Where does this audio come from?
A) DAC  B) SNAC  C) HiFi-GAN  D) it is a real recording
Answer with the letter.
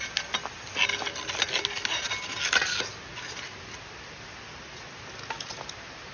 D